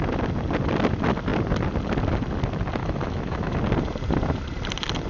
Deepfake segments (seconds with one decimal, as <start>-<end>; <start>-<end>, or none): 2.8-3.6